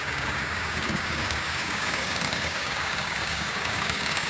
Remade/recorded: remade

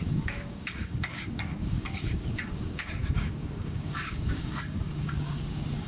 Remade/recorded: remade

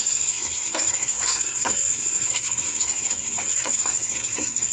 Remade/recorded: remade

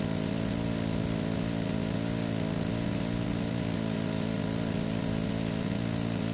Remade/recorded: recorded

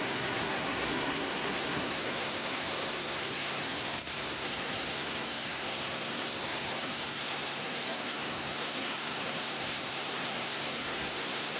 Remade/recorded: remade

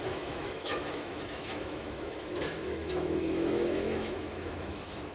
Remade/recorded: remade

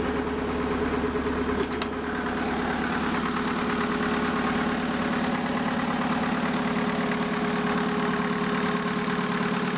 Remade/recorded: recorded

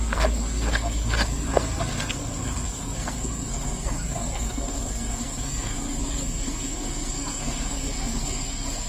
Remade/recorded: remade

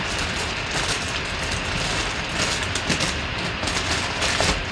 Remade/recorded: recorded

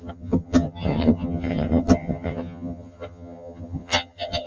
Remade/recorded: remade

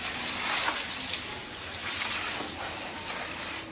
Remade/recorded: recorded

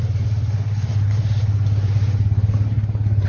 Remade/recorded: recorded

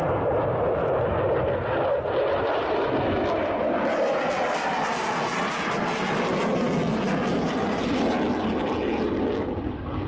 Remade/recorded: recorded